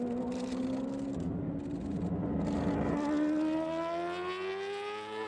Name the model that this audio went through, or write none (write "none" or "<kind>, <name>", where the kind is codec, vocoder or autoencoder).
none